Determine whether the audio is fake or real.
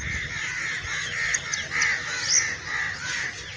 real